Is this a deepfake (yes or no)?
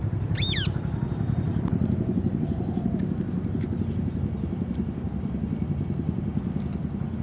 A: no